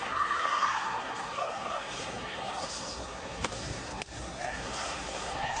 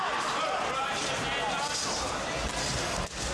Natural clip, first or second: second